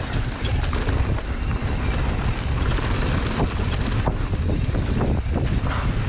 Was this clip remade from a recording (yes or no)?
no